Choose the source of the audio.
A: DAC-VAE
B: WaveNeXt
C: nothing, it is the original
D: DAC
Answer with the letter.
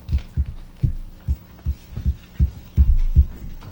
A